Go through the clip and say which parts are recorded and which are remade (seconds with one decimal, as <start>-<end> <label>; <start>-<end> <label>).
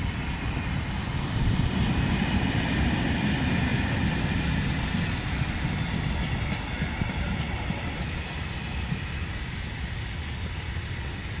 0.0-11.4 recorded